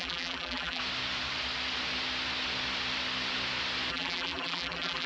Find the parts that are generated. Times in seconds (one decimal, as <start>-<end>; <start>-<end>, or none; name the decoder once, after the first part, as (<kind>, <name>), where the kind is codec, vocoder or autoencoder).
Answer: 0.0-0.8 (vocoder, BigVGAN v2); 3.9-5.1